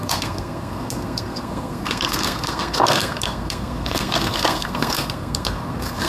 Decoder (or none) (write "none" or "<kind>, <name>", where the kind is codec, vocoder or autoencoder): codec, SNAC